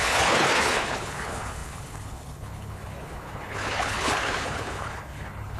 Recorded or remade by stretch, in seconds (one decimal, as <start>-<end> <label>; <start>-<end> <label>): 0.0-5.6 remade